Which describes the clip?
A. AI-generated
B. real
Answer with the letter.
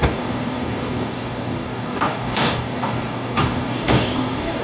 A